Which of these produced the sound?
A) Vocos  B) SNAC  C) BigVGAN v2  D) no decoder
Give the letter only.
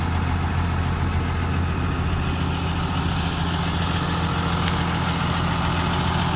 D